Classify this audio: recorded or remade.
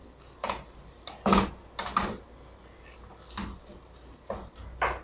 recorded